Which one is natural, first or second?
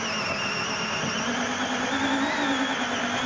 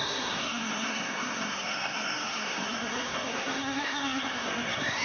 first